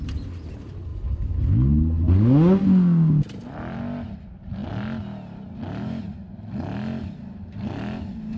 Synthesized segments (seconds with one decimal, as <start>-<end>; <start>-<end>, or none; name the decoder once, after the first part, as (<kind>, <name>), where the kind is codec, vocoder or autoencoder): none